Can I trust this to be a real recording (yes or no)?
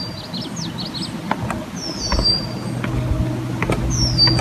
yes